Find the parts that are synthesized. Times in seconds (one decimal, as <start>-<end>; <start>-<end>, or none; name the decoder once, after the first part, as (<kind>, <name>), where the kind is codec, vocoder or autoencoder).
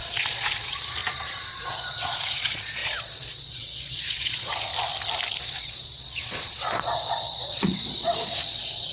0.0-1.0 (vocoder, Vocos); 1.5-4.7; 5.4-8.9